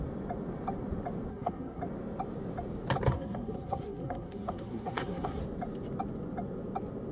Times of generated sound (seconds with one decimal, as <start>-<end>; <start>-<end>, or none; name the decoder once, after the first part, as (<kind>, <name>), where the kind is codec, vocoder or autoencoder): 1.3-1.8 (codec, SNAC); 3.1-5.4